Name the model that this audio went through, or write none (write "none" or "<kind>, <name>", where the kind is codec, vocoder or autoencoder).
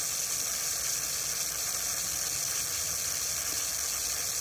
none